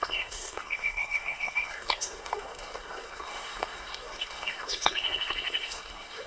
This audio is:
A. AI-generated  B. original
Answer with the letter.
A